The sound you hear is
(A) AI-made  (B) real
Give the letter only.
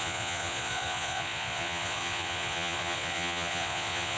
A